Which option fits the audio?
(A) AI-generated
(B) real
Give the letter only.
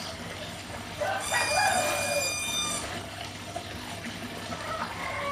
A